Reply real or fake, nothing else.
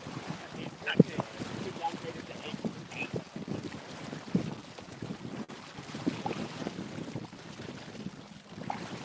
real